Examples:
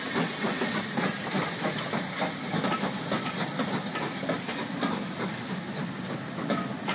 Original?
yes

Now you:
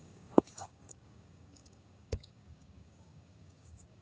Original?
no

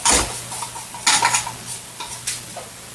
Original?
yes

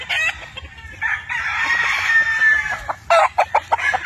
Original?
yes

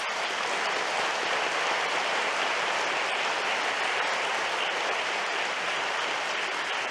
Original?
yes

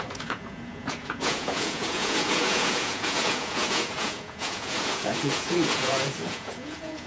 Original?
no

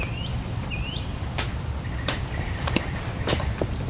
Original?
no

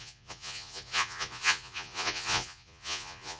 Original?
no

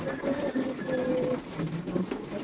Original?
yes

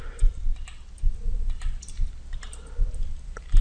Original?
yes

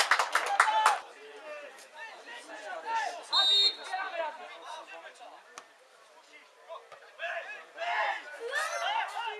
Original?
yes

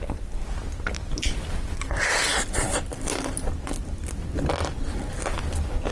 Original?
yes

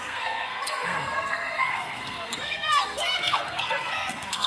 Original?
no